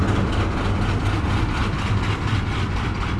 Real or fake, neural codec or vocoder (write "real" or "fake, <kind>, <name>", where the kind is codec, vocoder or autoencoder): real